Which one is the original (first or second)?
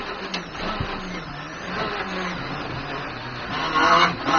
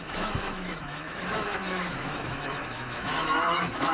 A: first